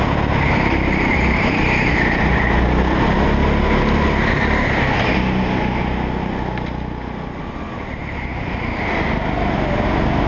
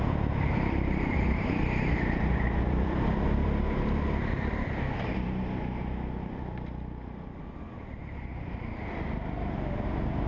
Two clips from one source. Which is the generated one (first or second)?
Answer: second